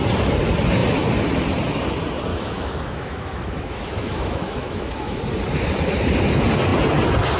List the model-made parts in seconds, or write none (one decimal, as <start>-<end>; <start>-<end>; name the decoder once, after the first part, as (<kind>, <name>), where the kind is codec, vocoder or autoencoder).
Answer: 2.3-5.2 (autoencoder, DAC-VAE)